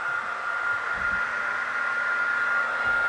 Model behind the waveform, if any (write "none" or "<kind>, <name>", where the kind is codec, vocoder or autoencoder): none